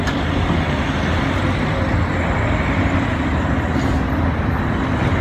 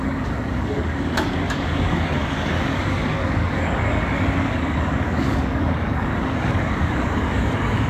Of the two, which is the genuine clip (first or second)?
first